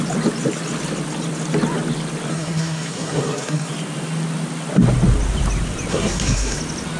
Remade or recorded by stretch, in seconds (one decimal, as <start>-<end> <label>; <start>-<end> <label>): 0.0-2.3 recorded; 2.3-3.7 remade; 3.7-5.9 recorded; 5.9-6.6 remade; 6.6-7.0 recorded